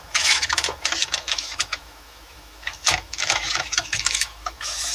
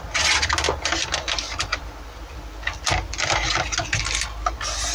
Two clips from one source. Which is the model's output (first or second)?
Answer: first